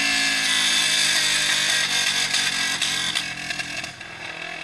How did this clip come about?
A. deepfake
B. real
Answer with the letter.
B